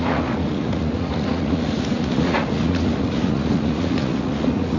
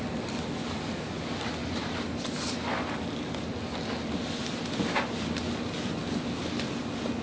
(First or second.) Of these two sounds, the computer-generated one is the first